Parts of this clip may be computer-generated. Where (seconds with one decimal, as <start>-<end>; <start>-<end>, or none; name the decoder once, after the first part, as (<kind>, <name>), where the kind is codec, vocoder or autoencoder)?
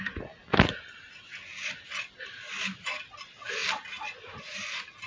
none